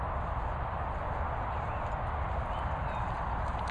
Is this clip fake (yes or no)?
no